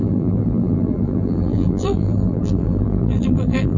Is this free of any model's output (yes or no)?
no